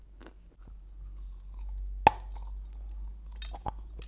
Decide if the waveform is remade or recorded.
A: recorded